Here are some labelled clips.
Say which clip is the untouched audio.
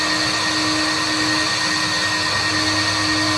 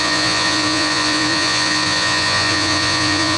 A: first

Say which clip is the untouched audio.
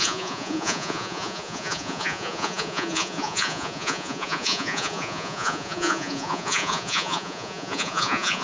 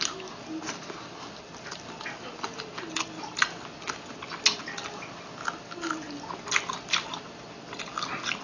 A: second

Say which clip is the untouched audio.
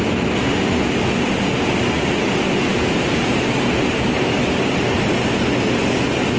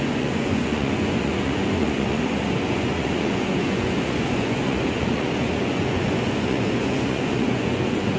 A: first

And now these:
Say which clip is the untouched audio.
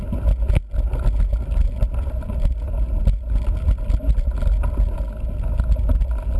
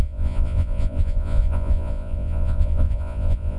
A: first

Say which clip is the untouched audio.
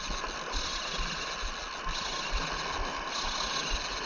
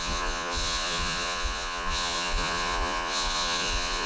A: first